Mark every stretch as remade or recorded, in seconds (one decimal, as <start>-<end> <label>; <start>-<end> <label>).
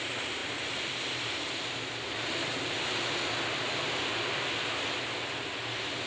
0.0-6.1 recorded